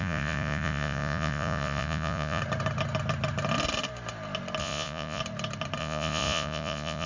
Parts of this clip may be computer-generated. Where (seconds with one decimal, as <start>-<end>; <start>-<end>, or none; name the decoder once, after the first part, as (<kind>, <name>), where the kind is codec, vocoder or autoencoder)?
0.0-2.4 (vocoder, Vocos); 4.6-5.2; 5.8-7.1